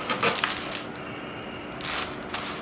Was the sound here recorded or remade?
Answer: recorded